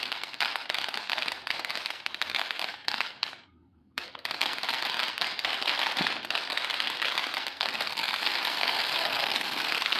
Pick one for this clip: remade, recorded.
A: remade